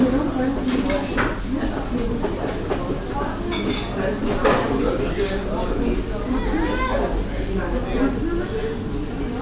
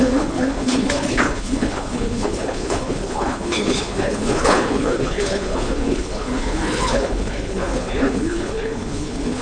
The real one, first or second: first